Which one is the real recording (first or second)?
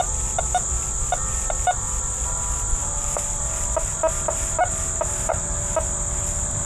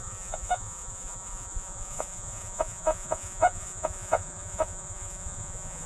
first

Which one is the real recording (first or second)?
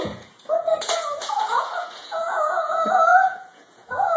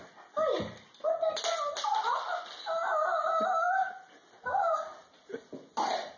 second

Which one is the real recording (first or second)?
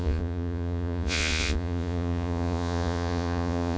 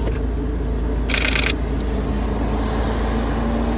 second